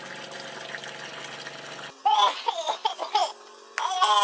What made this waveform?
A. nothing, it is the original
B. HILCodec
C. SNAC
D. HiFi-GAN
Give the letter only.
A